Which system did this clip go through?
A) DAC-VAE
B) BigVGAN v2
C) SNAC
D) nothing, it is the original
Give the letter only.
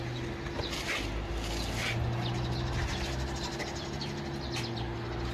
D